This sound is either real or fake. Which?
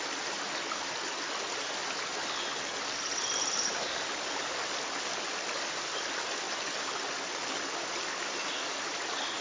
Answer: real